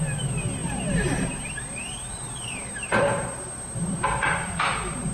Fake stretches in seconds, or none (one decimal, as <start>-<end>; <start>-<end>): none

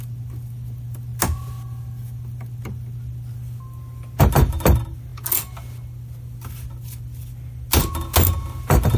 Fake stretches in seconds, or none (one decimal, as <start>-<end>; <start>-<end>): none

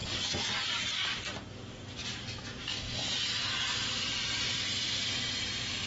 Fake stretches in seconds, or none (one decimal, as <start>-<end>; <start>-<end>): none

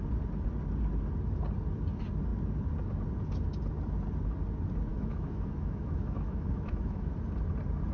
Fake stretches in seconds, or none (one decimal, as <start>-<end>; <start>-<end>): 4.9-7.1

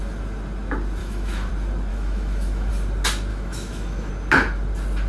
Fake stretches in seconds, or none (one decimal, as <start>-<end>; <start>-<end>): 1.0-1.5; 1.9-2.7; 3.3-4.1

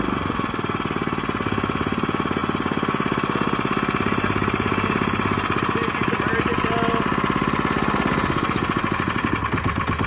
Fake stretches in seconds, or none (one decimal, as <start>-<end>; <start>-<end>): none

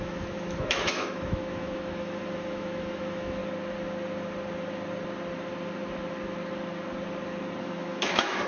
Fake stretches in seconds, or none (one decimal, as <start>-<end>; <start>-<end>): 0.0-3.4; 7.6-8.5